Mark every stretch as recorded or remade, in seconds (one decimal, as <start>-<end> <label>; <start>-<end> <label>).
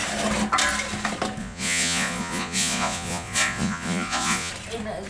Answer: 0.0-1.4 recorded; 1.4-4.5 remade; 4.5-5.1 recorded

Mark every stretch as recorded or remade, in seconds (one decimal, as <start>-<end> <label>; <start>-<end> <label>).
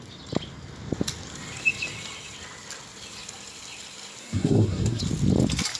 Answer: 0.0-4.2 recorded; 4.2-5.0 remade; 5.0-5.8 recorded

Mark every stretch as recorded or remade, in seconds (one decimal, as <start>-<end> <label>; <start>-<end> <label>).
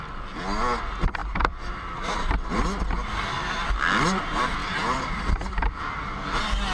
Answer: 0.0-1.2 recorded; 1.2-2.3 remade; 2.3-4.6 recorded; 4.6-5.7 remade; 5.7-6.7 recorded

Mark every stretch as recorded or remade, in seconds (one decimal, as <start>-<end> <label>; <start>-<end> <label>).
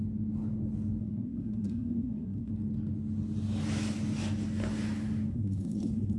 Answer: 0.0-1.0 recorded; 1.0-2.5 remade; 2.5-5.3 recorded; 5.3-6.2 remade